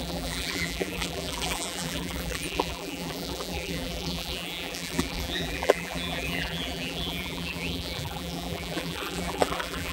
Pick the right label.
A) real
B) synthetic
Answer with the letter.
B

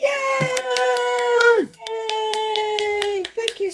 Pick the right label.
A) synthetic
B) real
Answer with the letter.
A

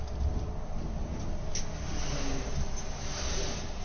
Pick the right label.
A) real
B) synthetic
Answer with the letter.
A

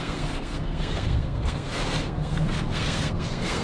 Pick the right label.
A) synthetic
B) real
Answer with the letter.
A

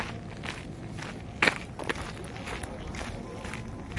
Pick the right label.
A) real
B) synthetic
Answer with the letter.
A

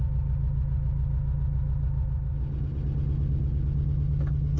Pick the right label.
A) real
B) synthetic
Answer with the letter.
A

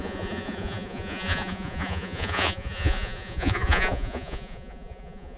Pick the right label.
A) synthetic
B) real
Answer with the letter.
A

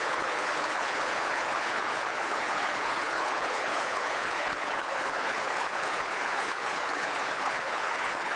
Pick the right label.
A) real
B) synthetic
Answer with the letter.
B